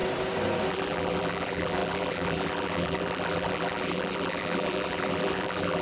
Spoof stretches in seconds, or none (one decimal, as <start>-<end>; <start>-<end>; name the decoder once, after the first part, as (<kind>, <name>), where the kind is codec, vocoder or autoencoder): 0.7-5.8 (vocoder, BigVGAN v2)